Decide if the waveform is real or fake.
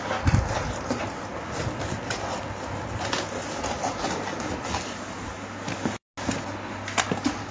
real